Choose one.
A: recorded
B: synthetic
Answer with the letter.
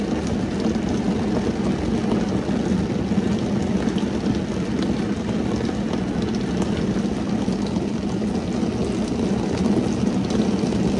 A